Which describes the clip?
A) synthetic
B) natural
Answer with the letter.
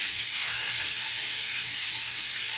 A